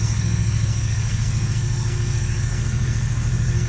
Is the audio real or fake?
fake